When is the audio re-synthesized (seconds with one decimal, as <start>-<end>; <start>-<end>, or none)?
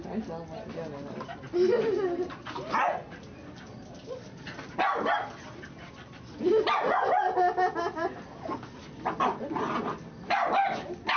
none